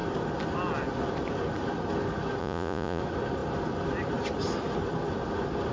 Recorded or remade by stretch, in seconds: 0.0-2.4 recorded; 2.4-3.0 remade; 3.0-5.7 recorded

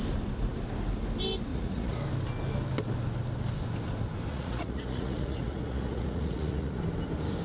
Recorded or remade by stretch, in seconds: 0.0-1.5 recorded; 1.5-2.0 remade; 2.0-4.3 recorded; 4.3-6.8 remade; 6.8-7.4 recorded

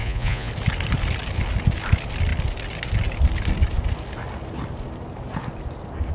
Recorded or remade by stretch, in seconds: 0.0-0.5 remade; 0.5-6.1 recorded

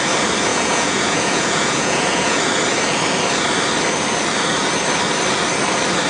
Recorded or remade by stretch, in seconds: 0.0-0.5 recorded; 0.5-2.4 remade; 2.4-6.1 recorded

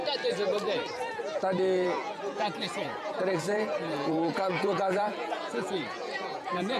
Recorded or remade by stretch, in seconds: 0.0-1.1 recorded; 1.1-6.8 remade

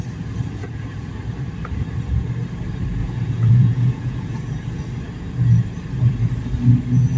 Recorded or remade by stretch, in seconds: 0.0-0.6 recorded; 0.6-1.1 remade; 1.1-3.0 recorded; 3.0-4.8 remade; 4.8-7.2 recorded

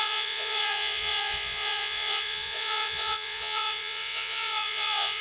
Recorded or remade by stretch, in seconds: 0.0-5.2 remade

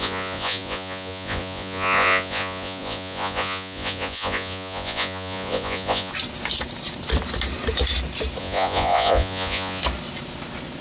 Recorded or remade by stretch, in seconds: 0.0-6.1 remade; 6.1-8.4 recorded; 8.4-9.8 remade; 9.8-10.8 recorded